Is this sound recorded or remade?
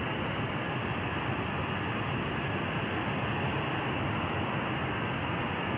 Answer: recorded